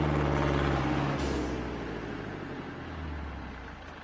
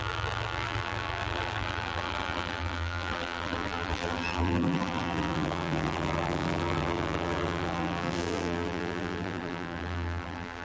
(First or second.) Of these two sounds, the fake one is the second